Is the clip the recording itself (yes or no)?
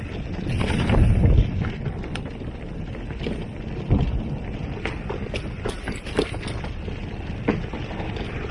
yes